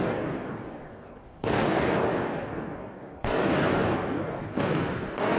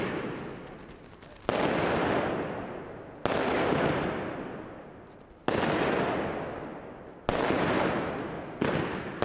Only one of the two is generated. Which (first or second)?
first